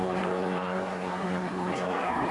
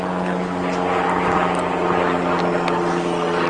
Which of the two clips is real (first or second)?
second